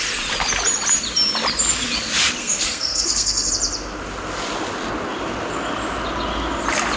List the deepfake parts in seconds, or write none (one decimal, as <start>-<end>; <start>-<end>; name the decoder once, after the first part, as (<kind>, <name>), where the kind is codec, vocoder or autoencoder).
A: 2.4-3.5 (codec, SNAC)